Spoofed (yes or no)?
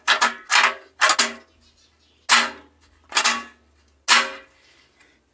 no